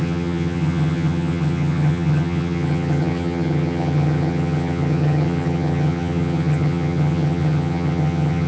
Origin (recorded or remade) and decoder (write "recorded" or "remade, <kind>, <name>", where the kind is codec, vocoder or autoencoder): remade, vocoder, HiFi-GAN